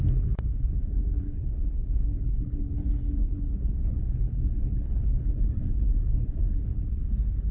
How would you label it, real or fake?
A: fake